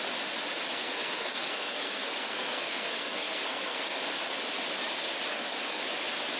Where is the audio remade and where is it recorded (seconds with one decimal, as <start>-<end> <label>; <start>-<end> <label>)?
0.0-0.7 recorded; 0.7-4.0 remade; 4.0-5.3 recorded; 5.3-5.8 remade; 5.8-6.4 recorded